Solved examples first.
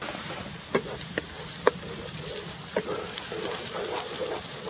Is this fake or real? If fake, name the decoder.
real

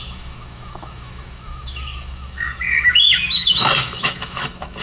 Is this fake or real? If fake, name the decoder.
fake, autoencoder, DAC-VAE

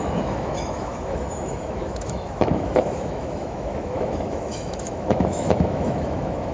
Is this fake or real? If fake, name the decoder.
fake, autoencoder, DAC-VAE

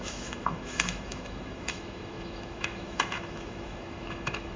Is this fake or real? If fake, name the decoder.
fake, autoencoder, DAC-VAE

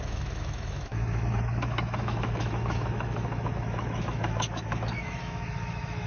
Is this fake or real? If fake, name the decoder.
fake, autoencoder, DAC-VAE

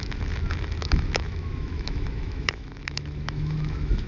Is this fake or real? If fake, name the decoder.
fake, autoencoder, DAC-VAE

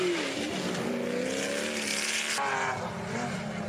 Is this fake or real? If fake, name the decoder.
real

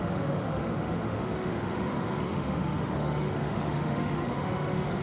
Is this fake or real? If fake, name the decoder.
fake, autoencoder, DAC-VAE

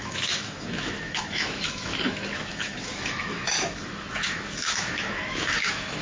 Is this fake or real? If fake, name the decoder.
fake, autoencoder, DAC-VAE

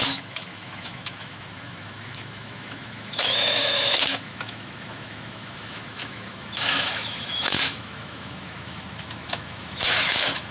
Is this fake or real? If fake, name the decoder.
fake, autoencoder, DAC-VAE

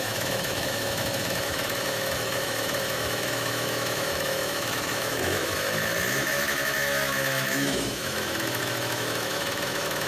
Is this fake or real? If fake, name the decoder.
fake, autoencoder, DAC-VAE